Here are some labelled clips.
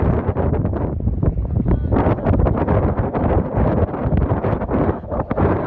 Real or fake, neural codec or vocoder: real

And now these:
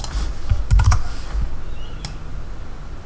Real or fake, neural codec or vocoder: real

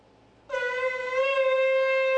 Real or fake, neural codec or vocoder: real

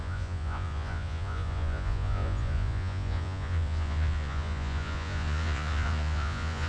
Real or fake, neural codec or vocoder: fake, vocoder, Vocos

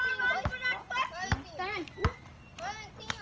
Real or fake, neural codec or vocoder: real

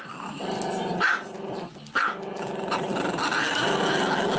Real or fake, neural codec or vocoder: real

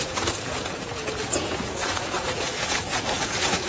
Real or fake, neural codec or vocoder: fake, vocoder, Vocos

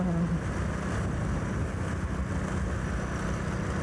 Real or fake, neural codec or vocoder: real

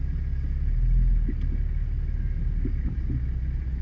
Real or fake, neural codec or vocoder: real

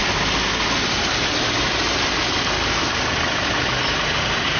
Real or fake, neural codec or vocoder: real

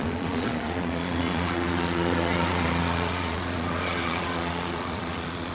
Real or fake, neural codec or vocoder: fake, vocoder, Vocos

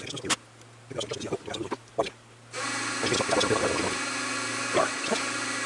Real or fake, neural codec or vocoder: real